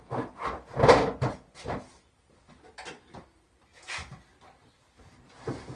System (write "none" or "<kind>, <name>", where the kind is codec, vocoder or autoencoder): none